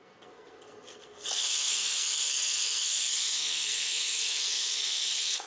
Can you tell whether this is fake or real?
fake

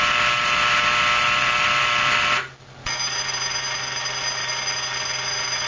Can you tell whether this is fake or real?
real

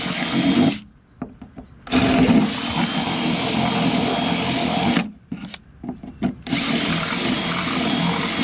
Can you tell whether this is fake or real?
real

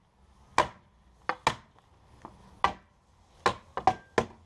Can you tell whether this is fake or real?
real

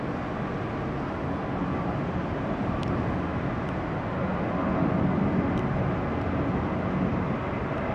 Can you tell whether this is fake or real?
real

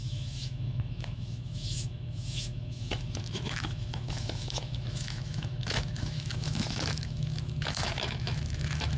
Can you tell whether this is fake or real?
fake